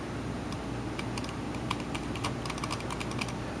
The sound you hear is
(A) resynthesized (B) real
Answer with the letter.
B